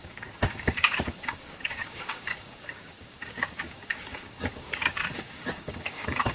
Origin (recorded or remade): remade